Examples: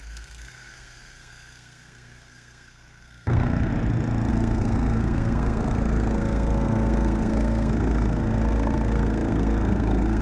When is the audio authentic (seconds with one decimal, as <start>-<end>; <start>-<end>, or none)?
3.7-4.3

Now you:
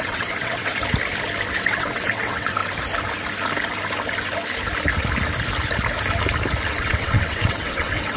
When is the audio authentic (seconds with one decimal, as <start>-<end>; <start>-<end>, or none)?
0.7-1.6; 2.6-6.7

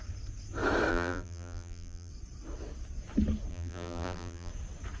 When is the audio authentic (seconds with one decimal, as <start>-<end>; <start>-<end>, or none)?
0.0-0.9; 2.1-3.5; 4.5-5.0

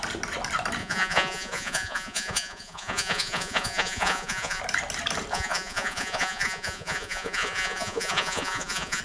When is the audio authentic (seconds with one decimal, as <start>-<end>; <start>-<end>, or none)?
0.0-0.8; 4.6-5.3